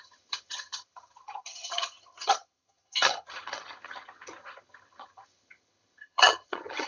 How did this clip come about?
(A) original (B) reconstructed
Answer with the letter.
B